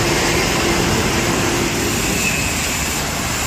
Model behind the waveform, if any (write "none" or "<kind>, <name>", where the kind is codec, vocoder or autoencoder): none